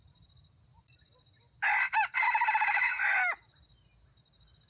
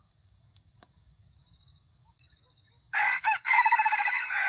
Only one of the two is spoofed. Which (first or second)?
second